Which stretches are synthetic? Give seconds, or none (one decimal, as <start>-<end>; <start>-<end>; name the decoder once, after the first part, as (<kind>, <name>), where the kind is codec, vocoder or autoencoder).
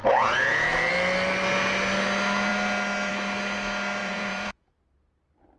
0.0-0.9 (vocoder, Vocos); 4.0-4.7